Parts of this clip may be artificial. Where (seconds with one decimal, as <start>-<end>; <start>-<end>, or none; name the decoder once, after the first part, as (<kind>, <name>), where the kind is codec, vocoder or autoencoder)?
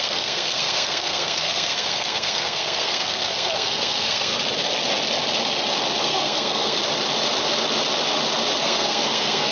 0.0-4.3 (codec, SNAC); 6.0-6.8; 8.6-9.5